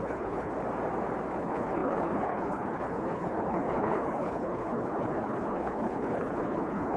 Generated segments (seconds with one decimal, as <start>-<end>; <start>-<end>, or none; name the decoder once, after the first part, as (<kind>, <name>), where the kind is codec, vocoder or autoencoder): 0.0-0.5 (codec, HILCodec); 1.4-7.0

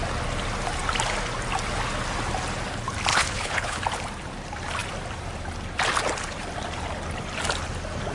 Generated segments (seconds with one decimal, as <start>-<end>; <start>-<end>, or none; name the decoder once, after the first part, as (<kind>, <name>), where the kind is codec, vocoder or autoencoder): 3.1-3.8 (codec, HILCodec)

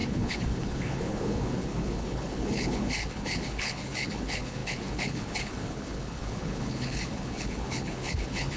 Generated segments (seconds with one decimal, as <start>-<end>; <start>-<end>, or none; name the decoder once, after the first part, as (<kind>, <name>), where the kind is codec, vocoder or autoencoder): 0.0-8.6 (codec, HILCodec)